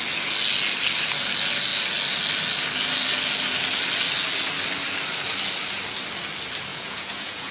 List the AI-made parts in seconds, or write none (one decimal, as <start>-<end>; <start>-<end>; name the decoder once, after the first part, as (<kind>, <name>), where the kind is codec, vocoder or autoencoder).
6.7-7.5 (vocoder, Vocos)